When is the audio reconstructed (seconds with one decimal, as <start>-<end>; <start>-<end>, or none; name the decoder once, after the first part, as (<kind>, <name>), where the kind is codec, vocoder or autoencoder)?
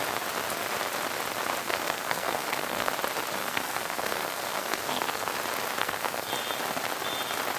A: 1.6-2.9 (codec, SNAC); 3.4-5.3; 5.8-6.3